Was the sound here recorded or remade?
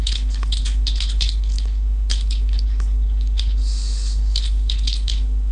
remade